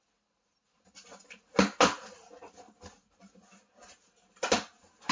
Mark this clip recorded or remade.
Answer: recorded